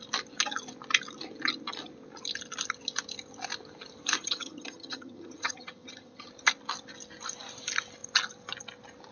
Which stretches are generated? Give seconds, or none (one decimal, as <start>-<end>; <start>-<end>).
4.2-6.3